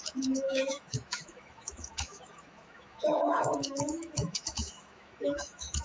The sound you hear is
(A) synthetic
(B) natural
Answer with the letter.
A